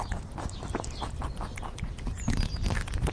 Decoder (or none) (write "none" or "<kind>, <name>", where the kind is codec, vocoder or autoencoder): none